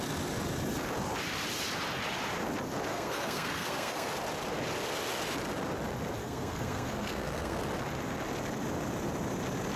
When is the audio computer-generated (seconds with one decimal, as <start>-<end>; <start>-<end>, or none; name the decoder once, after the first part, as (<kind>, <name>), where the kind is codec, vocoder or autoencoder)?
2.9-4.1 (codec, SNAC); 6.2-7.6